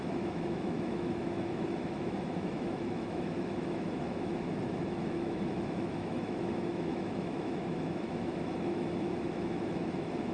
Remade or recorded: remade